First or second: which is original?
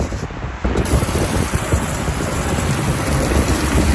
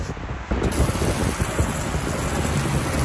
second